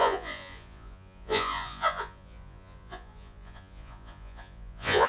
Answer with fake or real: fake